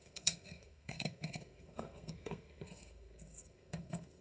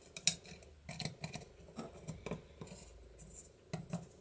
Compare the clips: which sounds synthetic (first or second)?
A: first